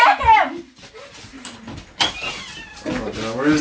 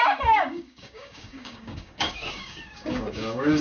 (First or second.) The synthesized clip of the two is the second